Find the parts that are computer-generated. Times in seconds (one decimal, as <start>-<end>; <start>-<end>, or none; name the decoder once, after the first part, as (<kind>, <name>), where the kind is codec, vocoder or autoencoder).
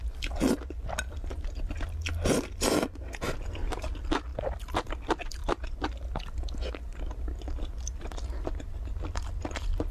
none